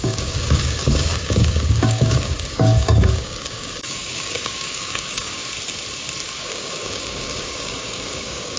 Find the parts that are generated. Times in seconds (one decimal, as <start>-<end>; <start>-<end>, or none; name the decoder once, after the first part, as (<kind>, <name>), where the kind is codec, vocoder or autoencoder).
0.0-5.4 (codec, DAC); 6.4-8.6